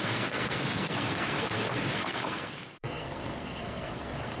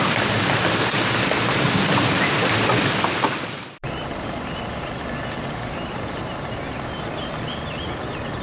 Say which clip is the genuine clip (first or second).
second